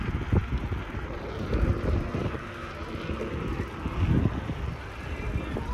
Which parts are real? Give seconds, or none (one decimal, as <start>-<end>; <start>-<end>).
0.0-2.2; 2.7-5.7